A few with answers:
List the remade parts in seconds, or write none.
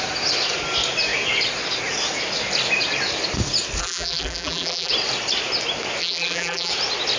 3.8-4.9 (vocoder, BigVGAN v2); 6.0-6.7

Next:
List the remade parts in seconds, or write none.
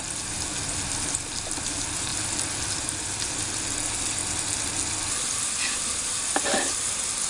none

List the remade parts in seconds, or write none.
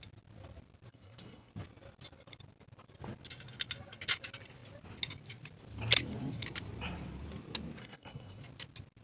0.9-1.5 (codec, SNAC); 7.8-8.4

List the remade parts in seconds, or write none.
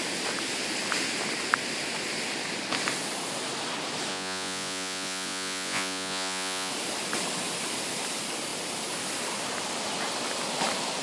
4.1-6.7 (vocoder, Vocos)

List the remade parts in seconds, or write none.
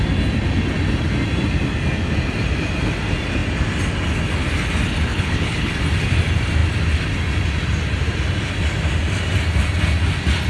5.1-5.7 (codec, HILCodec)